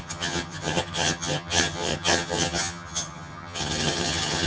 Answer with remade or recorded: remade